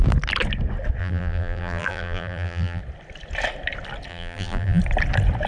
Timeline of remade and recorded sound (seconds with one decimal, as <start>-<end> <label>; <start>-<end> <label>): 0.0-1.0 recorded; 1.0-2.8 remade; 2.8-4.1 recorded; 4.1-4.8 remade; 4.8-5.5 recorded